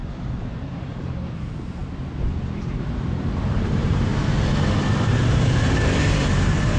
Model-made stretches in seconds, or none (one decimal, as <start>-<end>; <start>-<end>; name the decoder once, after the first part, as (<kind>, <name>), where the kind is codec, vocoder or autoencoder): 0.5-1.8 (vocoder, BigVGAN v2); 2.6-4.1; 5.2-6.8